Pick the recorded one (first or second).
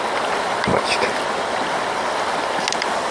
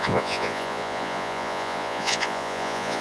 first